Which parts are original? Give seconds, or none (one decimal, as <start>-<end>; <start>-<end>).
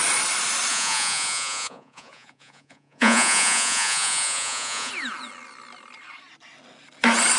0.0-0.7; 4.9-7.4